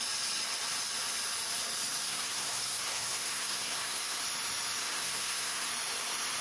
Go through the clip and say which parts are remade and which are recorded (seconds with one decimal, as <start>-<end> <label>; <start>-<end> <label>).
0.0-2.0 recorded; 2.0-4.2 remade; 4.2-4.8 recorded; 4.8-5.7 remade; 5.7-6.4 recorded

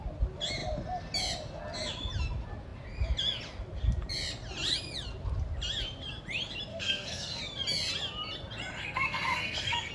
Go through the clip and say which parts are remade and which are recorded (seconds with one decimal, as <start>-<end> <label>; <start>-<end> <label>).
0.0-6.7 recorded; 6.7-7.4 remade; 7.4-8.8 recorded; 8.8-9.9 remade

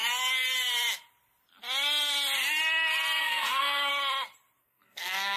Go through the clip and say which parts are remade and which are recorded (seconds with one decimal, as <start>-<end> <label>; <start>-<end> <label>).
0.0-3.2 recorded; 3.2-3.9 remade; 3.9-4.6 recorded; 4.6-5.4 remade

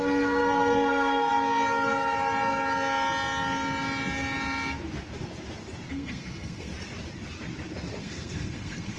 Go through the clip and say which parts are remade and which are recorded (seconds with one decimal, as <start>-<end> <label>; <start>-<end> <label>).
0.0-1.3 remade; 1.3-5.9 recorded; 5.9-6.7 remade; 6.7-8.0 recorded; 8.0-9.0 remade

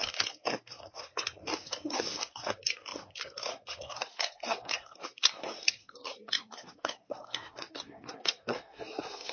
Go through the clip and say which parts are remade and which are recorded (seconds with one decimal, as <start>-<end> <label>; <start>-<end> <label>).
0.0-9.3 remade

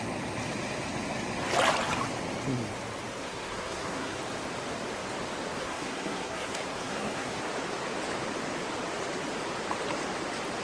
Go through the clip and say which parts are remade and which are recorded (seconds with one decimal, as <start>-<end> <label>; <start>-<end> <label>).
0.0-3.2 recorded; 3.2-4.2 remade; 4.2-5.6 recorded; 5.6-7.4 remade; 7.4-10.6 recorded

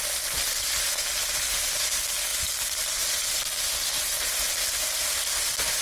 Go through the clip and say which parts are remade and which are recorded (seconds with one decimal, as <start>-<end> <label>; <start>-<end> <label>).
0.0-5.8 recorded

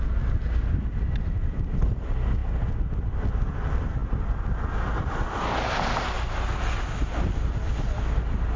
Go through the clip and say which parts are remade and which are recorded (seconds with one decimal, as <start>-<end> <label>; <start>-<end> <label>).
0.0-8.6 recorded